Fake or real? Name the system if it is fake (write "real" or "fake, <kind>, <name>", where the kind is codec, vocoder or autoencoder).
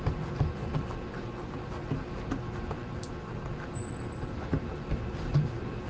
real